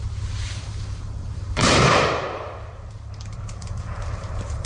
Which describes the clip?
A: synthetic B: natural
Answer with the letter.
A